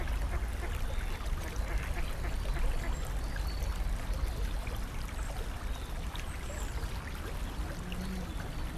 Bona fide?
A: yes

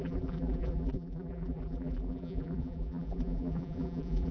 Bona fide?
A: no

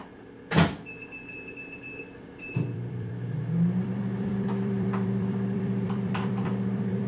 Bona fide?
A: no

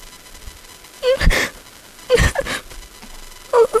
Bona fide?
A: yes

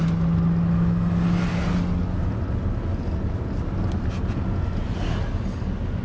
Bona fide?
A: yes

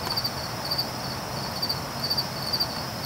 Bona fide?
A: yes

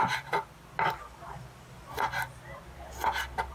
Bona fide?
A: yes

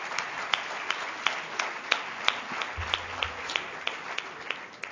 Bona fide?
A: yes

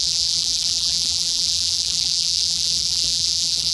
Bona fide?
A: no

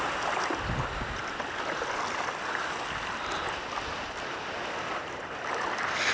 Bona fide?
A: yes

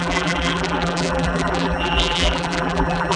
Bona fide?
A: no